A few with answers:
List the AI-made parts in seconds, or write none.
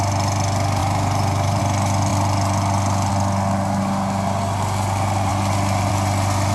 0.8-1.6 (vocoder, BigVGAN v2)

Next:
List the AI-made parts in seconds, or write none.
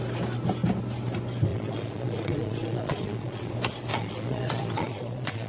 1.5-3.5 (vocoder, Vocos); 3.9-5.5